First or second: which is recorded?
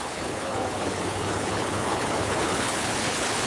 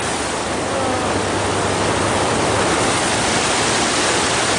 second